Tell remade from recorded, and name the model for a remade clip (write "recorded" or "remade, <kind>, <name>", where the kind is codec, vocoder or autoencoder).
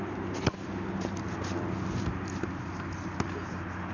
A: recorded